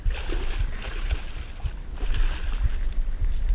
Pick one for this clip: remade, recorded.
recorded